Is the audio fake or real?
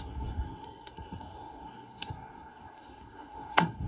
fake